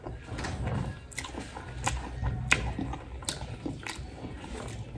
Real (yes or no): yes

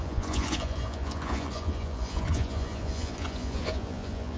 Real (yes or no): no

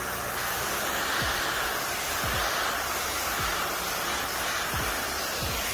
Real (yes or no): yes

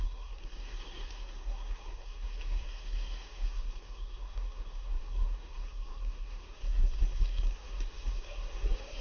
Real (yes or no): no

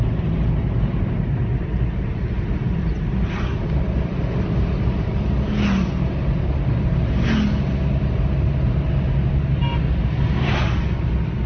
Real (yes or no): yes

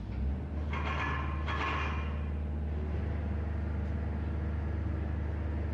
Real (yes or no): yes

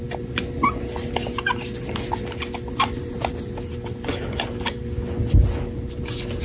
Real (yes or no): yes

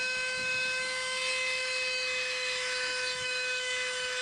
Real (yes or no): no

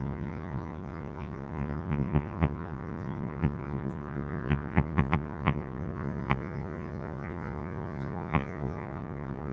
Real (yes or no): no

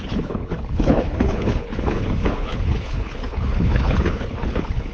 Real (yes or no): no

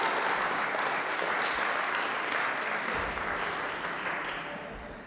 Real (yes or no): no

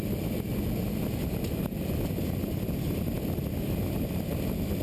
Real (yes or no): yes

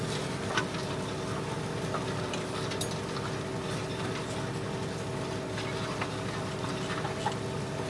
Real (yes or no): yes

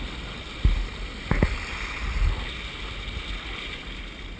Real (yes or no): yes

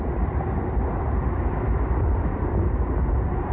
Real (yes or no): yes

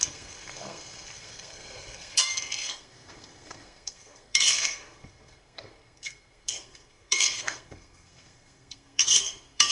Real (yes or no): no